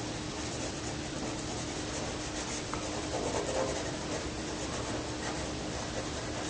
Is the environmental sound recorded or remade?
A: recorded